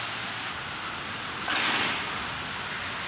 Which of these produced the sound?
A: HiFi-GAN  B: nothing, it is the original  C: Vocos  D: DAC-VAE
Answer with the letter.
B